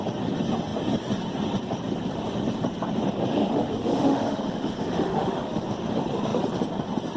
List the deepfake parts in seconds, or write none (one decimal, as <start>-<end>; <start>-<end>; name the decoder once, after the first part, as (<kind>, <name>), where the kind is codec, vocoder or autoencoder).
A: 3.4-5.6 (autoencoder, DAC-VAE)